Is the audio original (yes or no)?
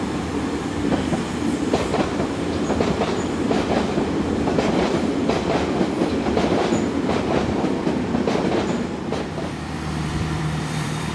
no